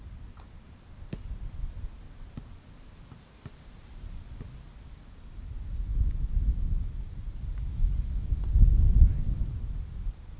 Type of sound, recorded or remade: recorded